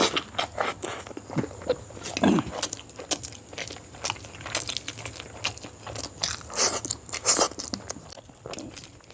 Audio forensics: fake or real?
real